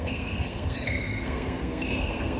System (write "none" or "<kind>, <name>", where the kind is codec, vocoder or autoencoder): codec, SNAC